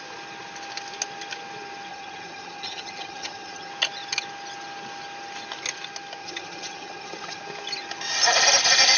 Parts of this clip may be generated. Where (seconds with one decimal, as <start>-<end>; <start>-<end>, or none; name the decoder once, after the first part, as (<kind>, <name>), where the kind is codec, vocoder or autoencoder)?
1.9-3.7 (vocoder, HiFi-GAN); 6.2-7.4